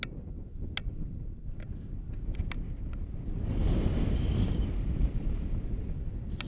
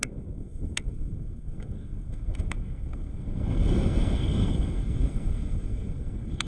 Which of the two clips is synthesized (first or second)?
second